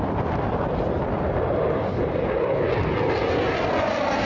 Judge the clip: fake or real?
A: real